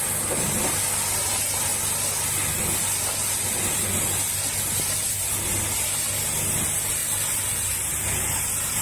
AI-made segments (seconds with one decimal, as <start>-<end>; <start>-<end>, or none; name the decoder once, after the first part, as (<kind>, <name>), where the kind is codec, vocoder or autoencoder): none